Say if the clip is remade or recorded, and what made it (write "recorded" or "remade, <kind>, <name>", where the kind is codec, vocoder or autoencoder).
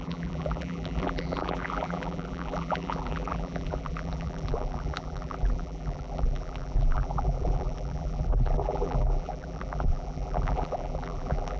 remade, vocoder, BigVGAN v2